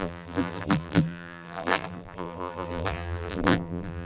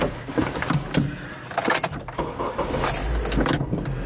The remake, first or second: first